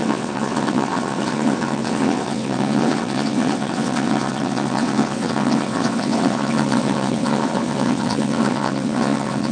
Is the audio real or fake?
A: fake